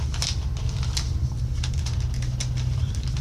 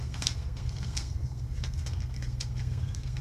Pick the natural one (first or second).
first